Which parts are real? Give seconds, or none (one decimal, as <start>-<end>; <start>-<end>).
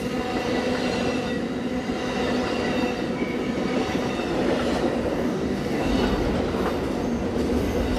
0.0-5.1; 5.9-8.0